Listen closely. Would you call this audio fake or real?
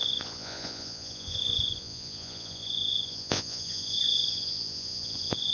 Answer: fake